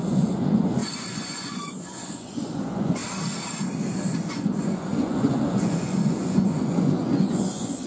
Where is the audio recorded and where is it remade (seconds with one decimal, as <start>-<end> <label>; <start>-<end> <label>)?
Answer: 0.0-3.0 remade; 3.0-4.2 recorded; 4.2-7.9 remade